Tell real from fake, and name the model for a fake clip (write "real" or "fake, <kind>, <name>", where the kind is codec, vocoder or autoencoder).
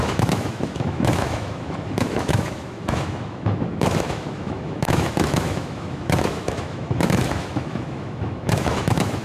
fake, autoencoder, DAC-VAE